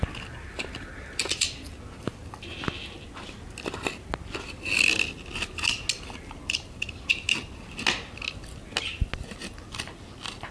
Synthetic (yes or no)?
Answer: no